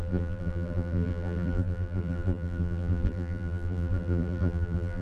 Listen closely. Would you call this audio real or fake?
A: fake